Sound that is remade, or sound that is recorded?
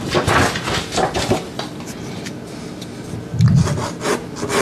recorded